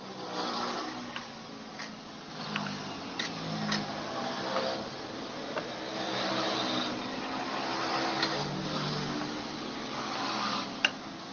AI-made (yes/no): no